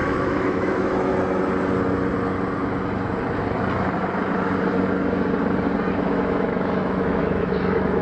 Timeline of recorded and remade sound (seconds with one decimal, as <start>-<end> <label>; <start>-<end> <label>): 0.0-1.1 remade; 1.1-5.9 recorded; 5.9-8.0 remade